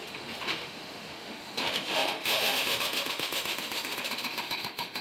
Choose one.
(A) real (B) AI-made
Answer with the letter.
B